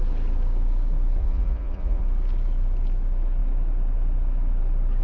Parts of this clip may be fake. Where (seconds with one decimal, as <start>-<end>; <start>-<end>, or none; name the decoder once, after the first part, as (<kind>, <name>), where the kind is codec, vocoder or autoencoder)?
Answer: 1.2-2.0 (vocoder, Vocos)